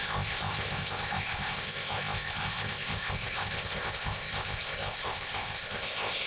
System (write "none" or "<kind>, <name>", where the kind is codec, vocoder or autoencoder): codec, ZipCodec